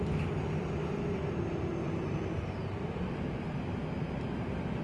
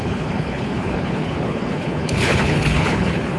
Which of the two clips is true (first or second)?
first